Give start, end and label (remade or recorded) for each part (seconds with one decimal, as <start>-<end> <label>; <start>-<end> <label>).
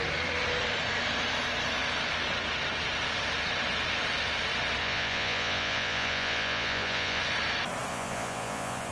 0.0-4.8 recorded; 4.8-7.2 remade; 7.2-7.9 recorded; 7.9-8.9 remade